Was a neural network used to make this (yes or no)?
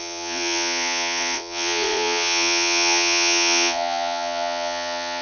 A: yes